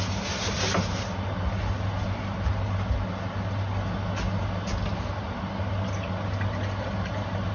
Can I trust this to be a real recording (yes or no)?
yes